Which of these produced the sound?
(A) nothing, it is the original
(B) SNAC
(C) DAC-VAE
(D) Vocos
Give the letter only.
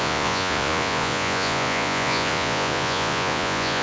D